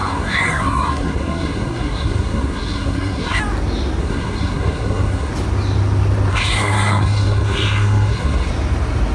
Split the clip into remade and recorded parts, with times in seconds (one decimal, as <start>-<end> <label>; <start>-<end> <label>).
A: 0.0-3.4 remade; 3.4-4.0 recorded; 4.0-5.3 remade; 5.3-6.3 recorded; 6.3-8.5 remade; 8.5-9.1 recorded